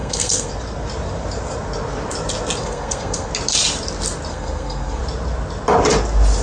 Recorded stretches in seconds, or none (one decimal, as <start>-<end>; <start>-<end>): 0.5-2.6; 3.3-4.3; 5.0-6.4